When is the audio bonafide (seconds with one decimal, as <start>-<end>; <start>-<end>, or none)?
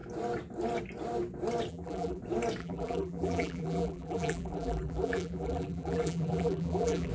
0.0-1.7; 2.2-2.6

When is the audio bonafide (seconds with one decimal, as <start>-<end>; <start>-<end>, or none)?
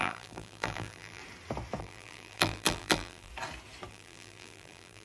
1.2-1.8; 3.3-3.9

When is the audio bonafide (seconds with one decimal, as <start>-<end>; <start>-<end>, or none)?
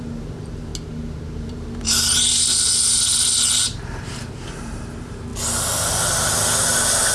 0.7-1.4; 2.5-3.5; 5.3-6.6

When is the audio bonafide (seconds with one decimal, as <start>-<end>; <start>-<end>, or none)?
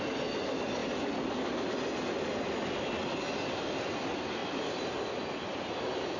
0.0-4.4; 5.1-6.2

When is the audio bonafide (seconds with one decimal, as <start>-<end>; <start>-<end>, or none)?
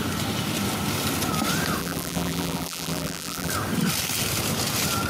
0.0-1.8; 3.5-5.1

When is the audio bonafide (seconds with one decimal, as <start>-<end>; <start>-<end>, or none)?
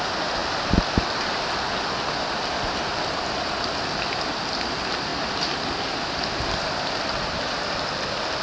0.0-8.4